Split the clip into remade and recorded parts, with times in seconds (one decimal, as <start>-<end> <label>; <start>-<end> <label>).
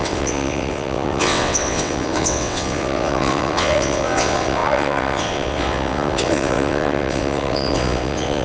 0.0-8.4 remade